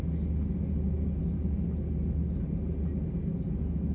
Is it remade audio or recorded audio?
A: recorded